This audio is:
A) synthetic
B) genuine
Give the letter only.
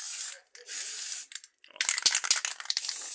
B